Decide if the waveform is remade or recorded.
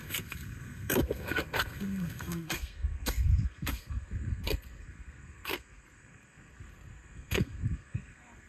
remade